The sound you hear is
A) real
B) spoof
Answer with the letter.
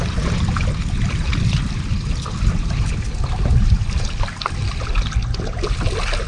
A